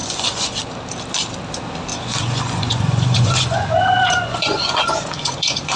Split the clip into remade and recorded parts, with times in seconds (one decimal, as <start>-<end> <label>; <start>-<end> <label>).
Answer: 0.0-0.6 remade; 0.6-1.9 recorded; 1.9-5.8 remade